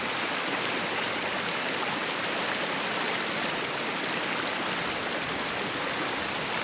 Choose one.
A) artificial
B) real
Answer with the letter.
B